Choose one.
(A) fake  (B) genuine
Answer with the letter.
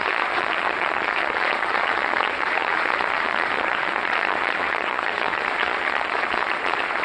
A